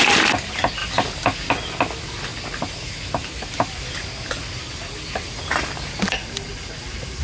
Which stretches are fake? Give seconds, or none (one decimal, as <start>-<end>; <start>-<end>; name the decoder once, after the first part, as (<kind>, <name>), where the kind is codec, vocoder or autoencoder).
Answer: none